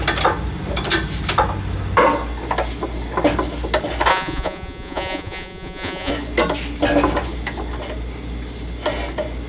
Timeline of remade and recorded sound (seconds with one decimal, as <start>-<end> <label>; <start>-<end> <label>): 0.0-4.1 recorded; 4.1-6.1 remade; 6.1-9.5 recorded